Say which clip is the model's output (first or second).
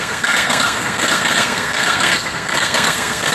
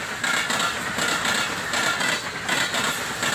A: first